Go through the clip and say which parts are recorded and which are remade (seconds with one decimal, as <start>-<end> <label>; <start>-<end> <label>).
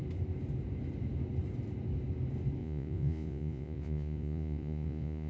0.0-2.6 recorded; 2.6-5.3 remade